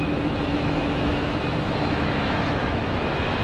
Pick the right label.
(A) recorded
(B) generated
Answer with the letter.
B